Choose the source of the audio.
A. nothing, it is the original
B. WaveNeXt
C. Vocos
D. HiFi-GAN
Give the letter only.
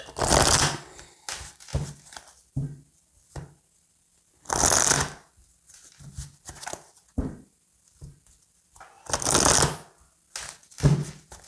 A